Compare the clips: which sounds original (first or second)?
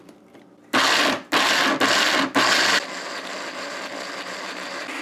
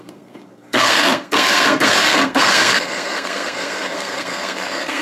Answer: first